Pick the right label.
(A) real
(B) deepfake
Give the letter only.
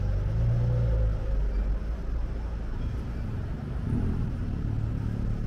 A